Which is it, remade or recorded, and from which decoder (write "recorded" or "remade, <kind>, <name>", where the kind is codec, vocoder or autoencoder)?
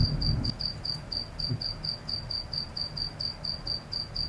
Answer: recorded